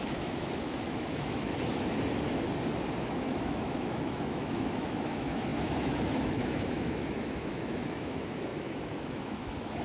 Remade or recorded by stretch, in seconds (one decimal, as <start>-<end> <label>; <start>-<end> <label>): 0.0-1.5 remade; 1.5-3.0 recorded; 3.0-9.8 remade